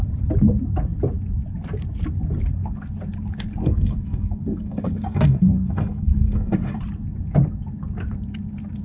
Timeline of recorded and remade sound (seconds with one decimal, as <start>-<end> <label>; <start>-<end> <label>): 0.0-3.6 recorded; 3.6-6.8 remade; 6.8-8.8 recorded